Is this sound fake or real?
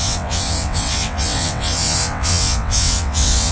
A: fake